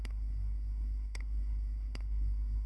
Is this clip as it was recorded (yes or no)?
no